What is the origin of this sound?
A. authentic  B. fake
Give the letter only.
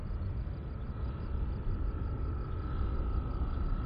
A